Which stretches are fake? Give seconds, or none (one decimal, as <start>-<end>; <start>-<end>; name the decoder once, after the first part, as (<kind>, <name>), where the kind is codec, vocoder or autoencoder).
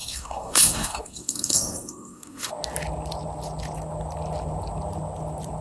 0.0-2.5 (codec, SNAC)